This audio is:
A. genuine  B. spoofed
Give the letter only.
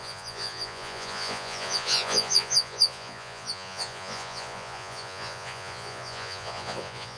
B